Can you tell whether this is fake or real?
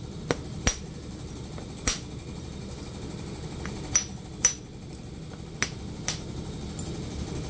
real